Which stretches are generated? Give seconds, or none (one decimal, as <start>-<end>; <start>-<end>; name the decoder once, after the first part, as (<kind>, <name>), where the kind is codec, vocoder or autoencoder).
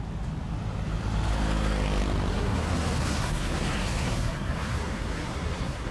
2.3-5.9 (codec, SNAC)